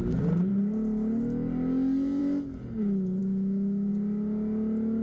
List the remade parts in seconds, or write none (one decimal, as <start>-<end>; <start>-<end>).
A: 3.2-3.9